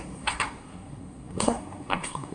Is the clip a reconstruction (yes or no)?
yes